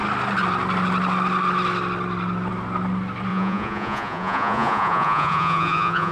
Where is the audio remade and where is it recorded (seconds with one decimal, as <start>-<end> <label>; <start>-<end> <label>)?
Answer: 0.0-3.3 recorded; 3.3-6.1 remade